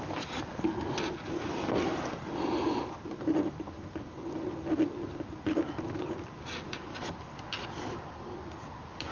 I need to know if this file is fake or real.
real